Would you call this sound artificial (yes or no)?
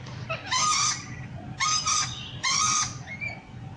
no